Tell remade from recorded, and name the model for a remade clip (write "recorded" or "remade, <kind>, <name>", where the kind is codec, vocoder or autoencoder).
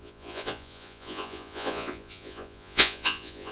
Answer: remade, vocoder, Vocos